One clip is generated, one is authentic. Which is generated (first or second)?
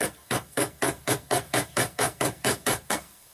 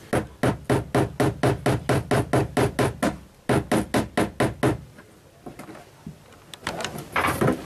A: first